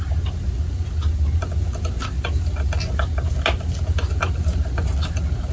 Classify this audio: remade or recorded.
recorded